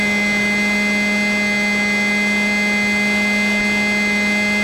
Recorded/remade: recorded